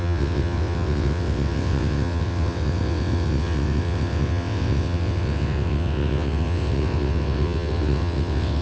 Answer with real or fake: fake